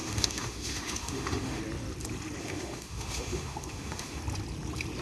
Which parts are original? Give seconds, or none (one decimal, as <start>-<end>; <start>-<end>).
1.6-2.4; 4.2-5.0